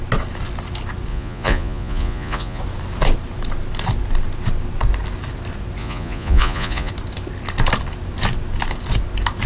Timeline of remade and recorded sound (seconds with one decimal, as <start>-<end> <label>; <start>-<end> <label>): 0.0-1.1 recorded; 1.1-2.6 remade; 2.6-5.8 recorded; 5.8-6.9 remade; 6.9-9.5 recorded